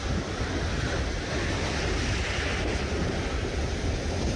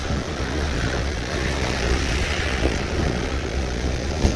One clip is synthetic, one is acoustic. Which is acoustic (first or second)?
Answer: first